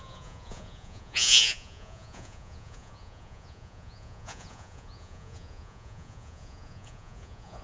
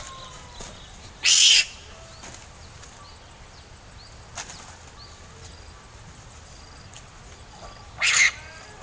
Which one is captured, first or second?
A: second